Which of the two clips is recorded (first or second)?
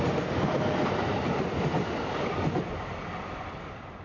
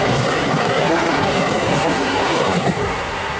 first